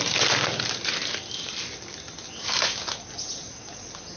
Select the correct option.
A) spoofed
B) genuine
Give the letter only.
B